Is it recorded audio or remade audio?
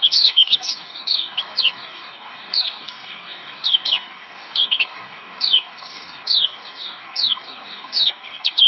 remade